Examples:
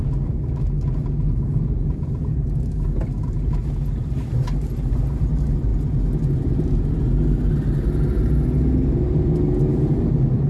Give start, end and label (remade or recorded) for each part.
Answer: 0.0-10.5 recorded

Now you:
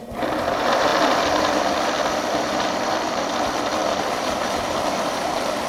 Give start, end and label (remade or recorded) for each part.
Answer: 0.0-5.7 remade